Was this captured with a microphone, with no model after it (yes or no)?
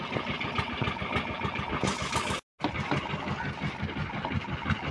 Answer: yes